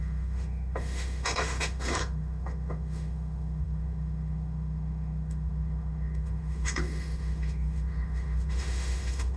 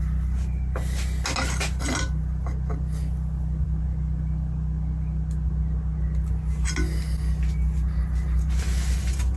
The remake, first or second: first